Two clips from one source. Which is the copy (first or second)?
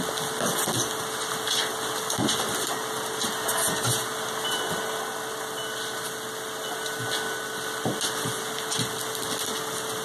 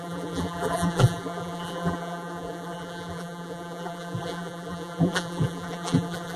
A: second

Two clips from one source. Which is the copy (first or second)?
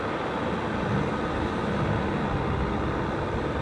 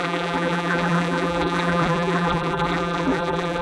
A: second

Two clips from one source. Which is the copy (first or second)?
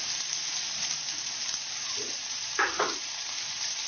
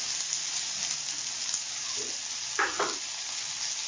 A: first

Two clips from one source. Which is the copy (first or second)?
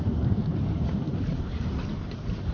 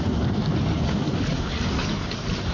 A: first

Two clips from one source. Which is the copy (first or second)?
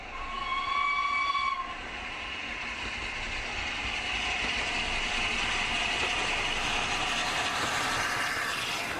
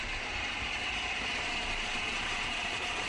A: second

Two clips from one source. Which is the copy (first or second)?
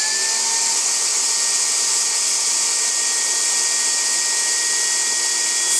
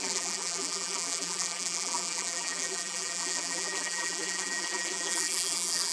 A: second